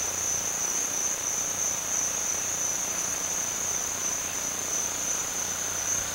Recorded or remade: recorded